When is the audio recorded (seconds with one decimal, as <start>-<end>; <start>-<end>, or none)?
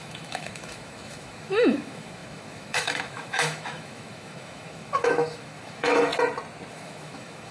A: 6.1-6.7